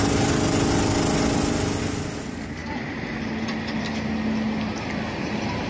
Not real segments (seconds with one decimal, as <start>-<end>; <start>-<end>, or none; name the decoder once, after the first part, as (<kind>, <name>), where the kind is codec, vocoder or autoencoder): none